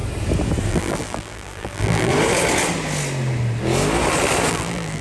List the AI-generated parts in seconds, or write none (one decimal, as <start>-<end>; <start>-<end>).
0.7-2.1; 4.5-5.0